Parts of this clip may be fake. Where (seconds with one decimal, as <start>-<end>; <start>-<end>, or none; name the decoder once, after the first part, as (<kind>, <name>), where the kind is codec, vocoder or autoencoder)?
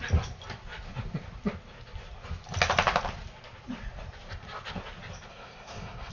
5.3-6.1 (codec, SNAC)